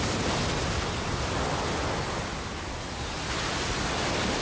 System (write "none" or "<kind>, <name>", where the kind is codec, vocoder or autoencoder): none